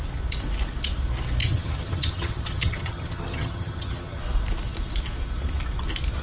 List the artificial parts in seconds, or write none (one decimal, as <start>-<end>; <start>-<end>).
1.4-4.2